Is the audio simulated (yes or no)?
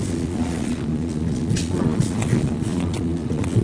yes